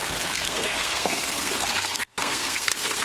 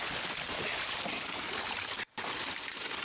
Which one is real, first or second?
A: second